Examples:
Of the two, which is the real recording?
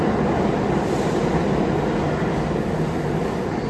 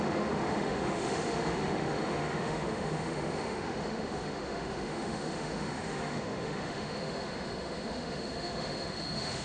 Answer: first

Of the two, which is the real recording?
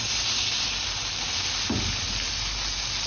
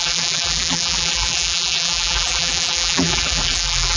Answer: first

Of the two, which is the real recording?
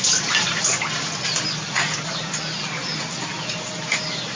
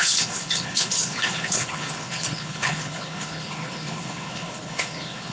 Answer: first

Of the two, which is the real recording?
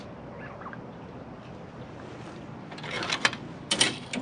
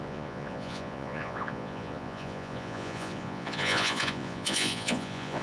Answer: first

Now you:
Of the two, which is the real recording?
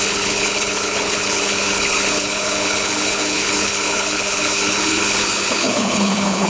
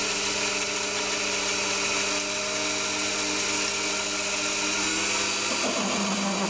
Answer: second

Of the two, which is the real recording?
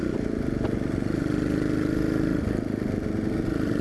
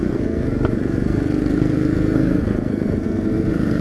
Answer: first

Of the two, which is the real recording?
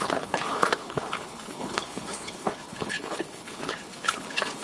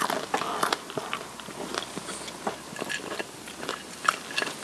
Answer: second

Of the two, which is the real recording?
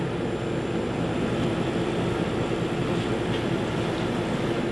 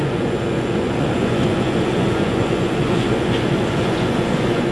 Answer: first